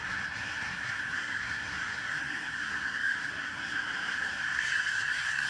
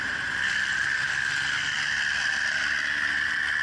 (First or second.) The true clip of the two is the second